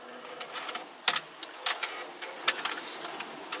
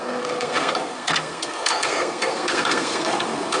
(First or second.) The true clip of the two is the first